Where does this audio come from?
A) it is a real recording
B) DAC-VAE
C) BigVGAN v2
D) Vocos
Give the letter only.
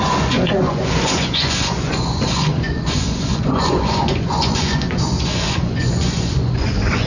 D